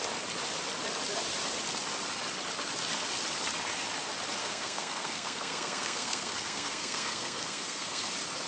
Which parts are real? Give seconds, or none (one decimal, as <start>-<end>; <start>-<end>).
0.0-4.4; 8.1-8.5